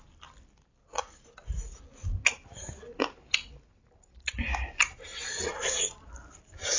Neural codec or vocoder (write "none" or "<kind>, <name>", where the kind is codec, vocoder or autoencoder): none